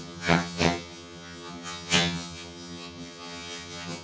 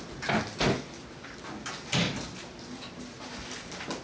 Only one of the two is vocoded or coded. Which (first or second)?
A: first